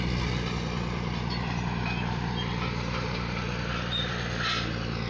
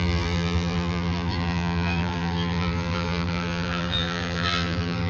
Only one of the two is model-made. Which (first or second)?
second